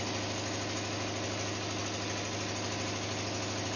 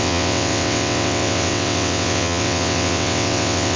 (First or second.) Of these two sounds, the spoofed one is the second